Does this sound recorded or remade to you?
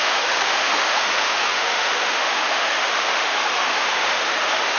remade